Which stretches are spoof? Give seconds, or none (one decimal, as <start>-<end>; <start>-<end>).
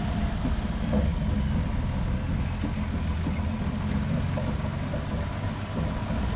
none